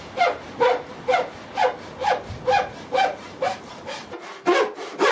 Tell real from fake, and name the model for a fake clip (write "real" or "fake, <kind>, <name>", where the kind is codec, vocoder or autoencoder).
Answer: real